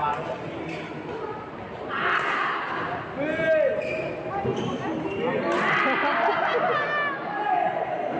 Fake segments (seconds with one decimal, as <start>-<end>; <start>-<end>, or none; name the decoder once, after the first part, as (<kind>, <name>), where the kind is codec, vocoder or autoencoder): none